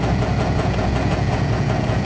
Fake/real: fake